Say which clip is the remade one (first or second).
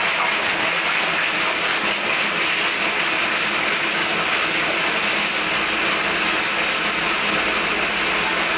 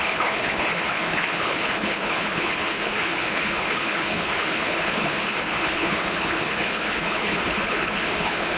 second